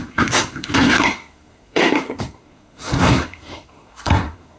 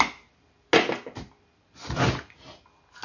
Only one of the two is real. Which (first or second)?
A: second